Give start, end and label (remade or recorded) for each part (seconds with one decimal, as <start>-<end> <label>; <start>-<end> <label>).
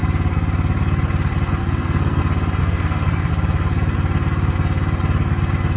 0.0-1.6 recorded; 1.6-2.2 remade; 2.2-2.6 recorded; 2.6-3.3 remade; 3.3-5.8 recorded